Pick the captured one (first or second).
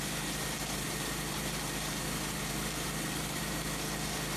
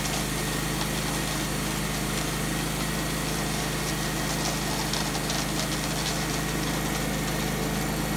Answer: second